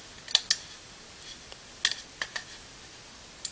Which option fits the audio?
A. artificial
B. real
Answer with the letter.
B